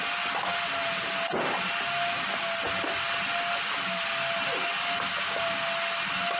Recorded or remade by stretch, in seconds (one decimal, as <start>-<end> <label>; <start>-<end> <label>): 0.0-6.4 recorded